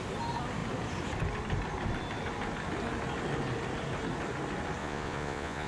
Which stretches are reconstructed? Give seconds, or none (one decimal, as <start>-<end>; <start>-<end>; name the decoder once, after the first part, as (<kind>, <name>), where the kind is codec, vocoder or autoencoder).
4.8-5.7 (vocoder, Vocos)